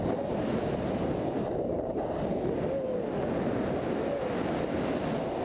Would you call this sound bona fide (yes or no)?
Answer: yes